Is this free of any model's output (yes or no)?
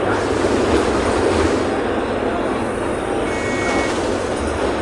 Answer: yes